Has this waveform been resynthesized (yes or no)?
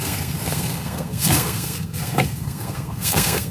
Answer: yes